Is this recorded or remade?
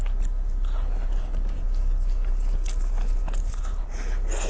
recorded